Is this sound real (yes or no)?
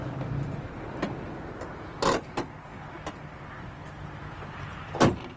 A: yes